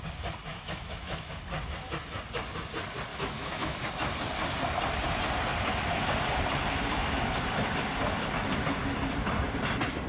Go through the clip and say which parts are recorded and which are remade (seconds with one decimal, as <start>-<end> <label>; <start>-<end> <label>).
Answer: 0.0-0.5 recorded; 0.5-1.3 remade; 1.3-3.1 recorded; 3.1-3.9 remade; 3.9-10.1 recorded